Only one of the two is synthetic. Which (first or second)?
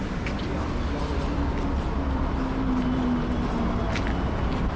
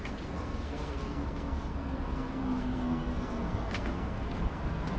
second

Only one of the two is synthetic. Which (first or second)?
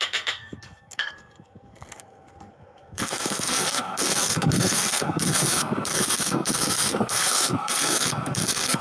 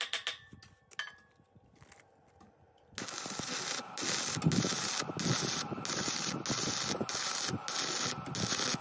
first